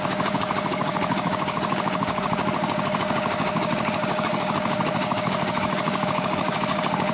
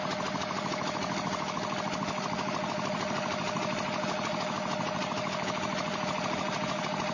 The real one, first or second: second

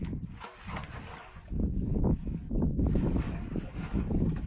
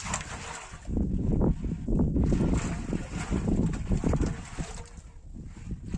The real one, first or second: second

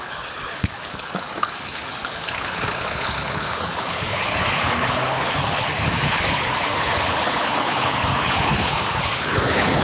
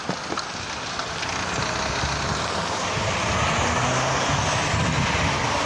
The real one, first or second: second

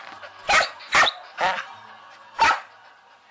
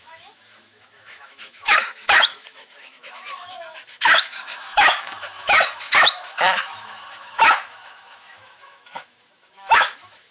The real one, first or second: first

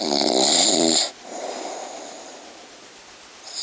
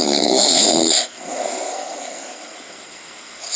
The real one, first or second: first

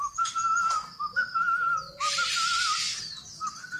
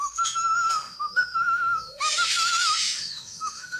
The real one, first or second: first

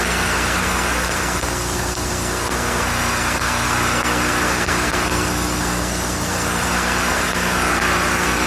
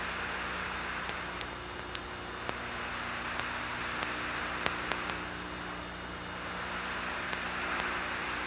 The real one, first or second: second